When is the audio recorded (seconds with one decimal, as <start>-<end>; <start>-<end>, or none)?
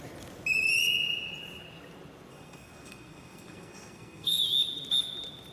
0.0-2.3; 4.4-5.5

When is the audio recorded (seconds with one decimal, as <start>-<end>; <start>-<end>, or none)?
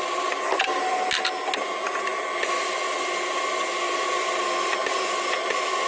0.0-5.9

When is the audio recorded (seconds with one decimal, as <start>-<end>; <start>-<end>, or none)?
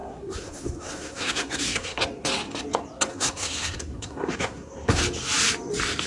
2.0-3.1; 5.0-6.1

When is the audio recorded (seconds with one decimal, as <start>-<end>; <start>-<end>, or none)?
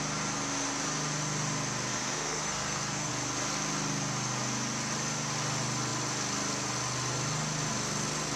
0.0-1.9; 3.1-8.4